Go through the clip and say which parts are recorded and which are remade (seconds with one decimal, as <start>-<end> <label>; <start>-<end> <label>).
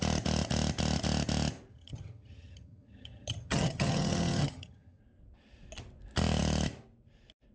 0.0-1.7 recorded; 1.7-5.0 remade; 5.0-7.5 recorded